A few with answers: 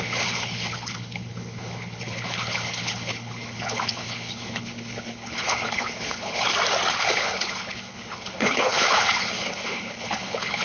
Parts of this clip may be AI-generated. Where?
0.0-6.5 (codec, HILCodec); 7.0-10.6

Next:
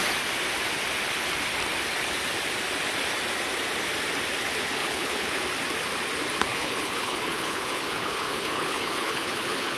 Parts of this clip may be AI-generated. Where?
4.8-5.4 (codec, HILCodec); 6.5-9.8

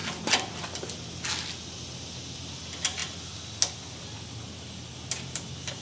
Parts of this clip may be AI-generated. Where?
none

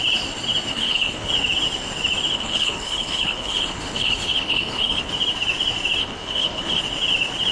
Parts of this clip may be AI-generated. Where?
0.7-1.3 (codec, HILCodec); 2.3-5.1; 6.0-6.8

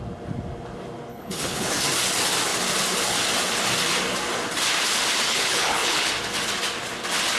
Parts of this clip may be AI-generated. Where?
1.1-1.7 (codec, HILCodec); 5.3-6.1